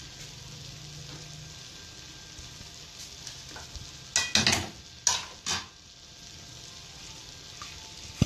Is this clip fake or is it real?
real